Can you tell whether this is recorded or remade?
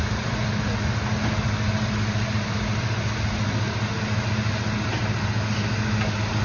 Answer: recorded